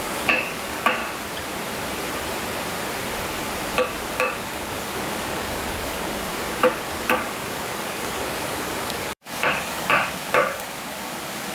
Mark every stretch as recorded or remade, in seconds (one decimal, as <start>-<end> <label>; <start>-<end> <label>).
0.0-1.0 remade; 1.0-4.1 recorded; 4.1-11.5 remade